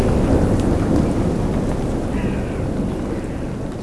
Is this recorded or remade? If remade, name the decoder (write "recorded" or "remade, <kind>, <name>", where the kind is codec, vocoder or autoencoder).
recorded